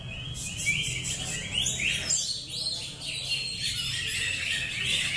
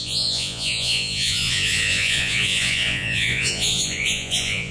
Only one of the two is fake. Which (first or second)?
second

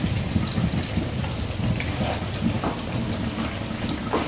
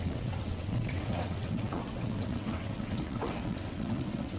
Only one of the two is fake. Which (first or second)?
second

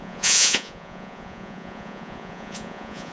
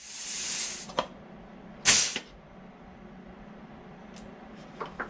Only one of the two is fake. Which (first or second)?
first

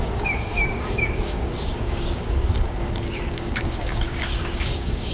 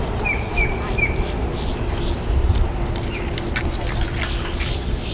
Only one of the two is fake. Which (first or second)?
first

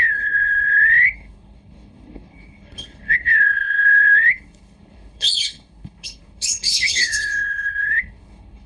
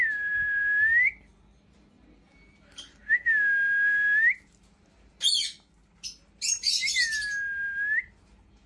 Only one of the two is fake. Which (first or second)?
first